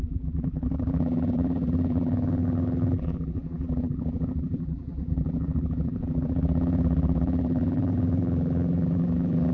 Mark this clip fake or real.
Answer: fake